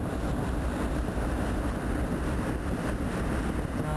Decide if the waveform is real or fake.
real